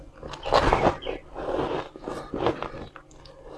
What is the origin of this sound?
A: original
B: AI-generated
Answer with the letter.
A